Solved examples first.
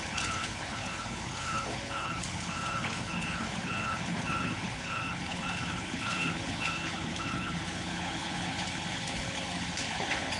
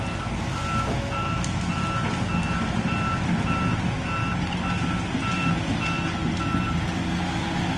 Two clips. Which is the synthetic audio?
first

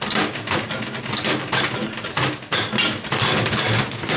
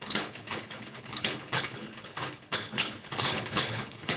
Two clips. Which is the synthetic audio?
second